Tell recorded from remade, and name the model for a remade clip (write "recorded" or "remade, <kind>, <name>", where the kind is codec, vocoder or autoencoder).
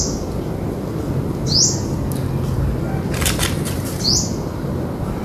recorded